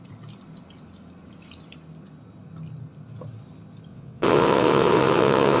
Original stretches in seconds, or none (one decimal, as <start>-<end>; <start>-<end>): 0.0-3.9